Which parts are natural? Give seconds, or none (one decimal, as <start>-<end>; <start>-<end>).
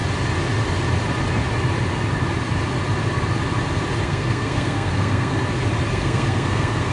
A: 0.0-4.0; 5.4-5.9